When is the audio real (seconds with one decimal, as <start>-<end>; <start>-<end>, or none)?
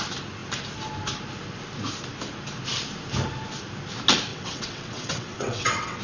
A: 0.0-4.3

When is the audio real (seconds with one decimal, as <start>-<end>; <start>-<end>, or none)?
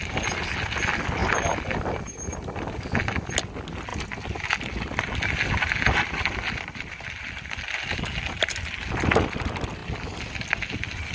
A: 0.0-11.1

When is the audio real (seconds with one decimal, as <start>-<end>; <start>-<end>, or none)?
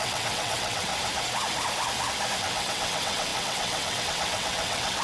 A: 0.9-2.4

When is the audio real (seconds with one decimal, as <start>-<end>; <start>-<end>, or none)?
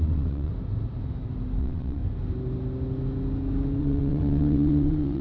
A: 0.5-1.6; 2.0-3.8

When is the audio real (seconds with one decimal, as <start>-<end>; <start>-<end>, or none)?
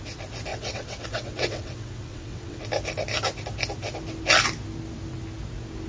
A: 0.0-0.5; 2.6-5.9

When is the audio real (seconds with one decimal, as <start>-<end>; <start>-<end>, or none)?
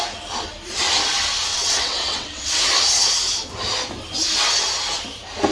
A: 0.0-1.5; 2.6-5.5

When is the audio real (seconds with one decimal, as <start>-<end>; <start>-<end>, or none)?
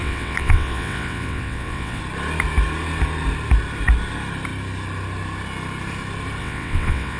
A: 2.0-6.4